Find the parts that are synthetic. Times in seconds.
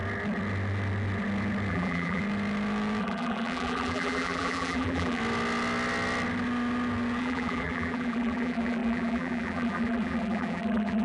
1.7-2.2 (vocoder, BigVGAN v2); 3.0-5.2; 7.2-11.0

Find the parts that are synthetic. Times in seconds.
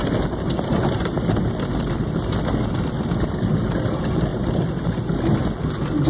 none